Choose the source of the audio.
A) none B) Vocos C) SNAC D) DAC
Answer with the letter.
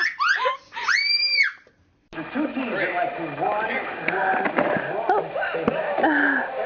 A